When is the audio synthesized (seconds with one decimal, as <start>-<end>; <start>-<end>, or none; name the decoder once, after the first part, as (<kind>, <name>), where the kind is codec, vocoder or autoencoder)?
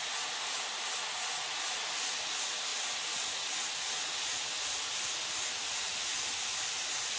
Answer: none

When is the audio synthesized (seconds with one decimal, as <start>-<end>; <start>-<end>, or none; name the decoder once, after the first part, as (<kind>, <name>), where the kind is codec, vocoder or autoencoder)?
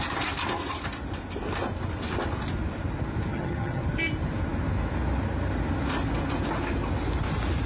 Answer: 3.3-3.8 (vocoder, HiFi-GAN)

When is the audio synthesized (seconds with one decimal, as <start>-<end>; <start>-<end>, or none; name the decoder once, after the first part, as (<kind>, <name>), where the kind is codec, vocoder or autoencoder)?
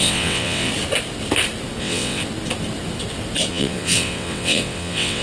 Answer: 0.0-0.7 (vocoder, WaveNeXt); 1.8-2.2; 3.5-5.2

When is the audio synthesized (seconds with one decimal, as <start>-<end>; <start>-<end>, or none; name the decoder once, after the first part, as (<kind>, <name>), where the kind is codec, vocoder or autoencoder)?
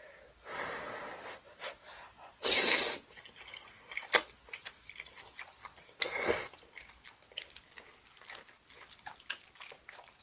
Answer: none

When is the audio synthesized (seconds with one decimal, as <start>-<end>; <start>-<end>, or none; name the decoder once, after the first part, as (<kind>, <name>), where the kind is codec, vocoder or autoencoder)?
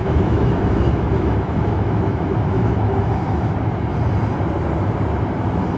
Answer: 0.0-3.5 (autoencoder, DAC-VAE)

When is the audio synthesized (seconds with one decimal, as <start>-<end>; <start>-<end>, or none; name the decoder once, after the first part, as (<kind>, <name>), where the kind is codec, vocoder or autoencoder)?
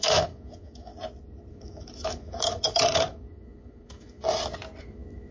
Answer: 0.0-0.9 (autoencoder, DAC-VAE); 1.5-4.2; 4.8-5.3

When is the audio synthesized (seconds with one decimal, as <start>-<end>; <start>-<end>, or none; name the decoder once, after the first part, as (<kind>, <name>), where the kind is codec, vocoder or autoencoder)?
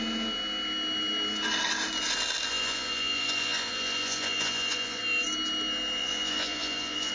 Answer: 2.5-5.0 (vocoder, Vocos); 6.0-7.1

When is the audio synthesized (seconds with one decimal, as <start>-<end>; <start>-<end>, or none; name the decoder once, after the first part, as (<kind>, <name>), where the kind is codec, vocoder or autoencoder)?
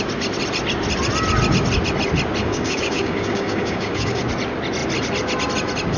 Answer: 2.4-4.2 (codec, DAC)